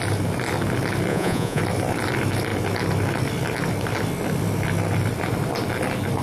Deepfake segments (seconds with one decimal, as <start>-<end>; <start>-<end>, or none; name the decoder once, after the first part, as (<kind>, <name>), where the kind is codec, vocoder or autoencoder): 1.1-1.6 (vocoder, Vocos)